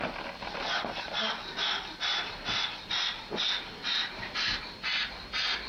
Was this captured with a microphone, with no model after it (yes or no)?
yes